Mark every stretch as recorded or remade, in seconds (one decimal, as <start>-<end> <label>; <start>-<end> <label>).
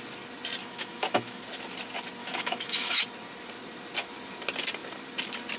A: 0.0-0.6 recorded; 0.6-1.4 remade; 1.4-2.2 recorded; 2.2-3.0 remade; 3.0-5.6 recorded